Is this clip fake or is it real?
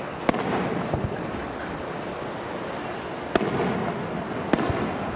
real